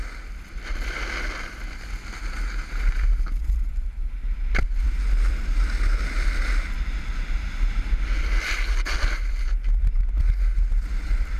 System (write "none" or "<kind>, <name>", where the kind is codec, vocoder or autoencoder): none